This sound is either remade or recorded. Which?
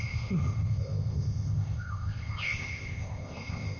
remade